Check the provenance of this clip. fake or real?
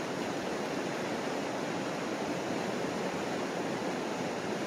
real